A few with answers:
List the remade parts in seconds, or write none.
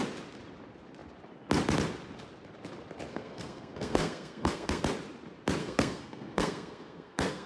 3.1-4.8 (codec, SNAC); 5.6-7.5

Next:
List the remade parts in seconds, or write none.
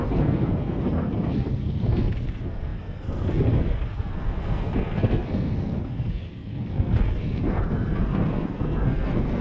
0.0-9.4 (codec, SNAC)